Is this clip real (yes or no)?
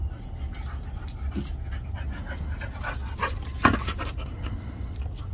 yes